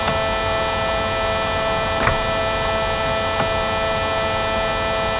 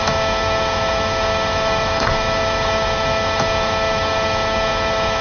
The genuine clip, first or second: first